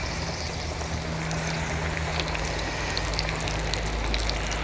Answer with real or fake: real